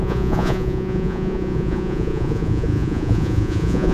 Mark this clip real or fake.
fake